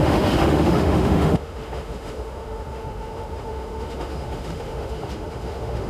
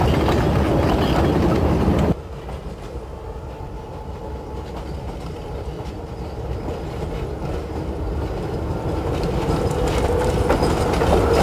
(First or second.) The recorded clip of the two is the second